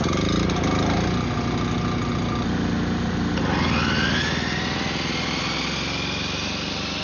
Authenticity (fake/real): real